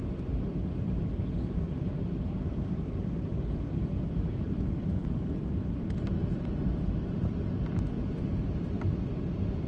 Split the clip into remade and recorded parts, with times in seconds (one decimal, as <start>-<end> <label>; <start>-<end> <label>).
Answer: 0.0-9.7 recorded